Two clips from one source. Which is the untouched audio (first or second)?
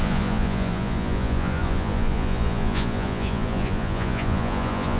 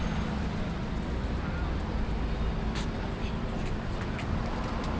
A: second